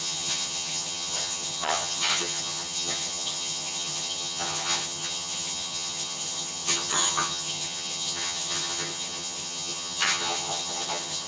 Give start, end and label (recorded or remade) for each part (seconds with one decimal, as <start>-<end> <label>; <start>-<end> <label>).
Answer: 0.0-11.3 remade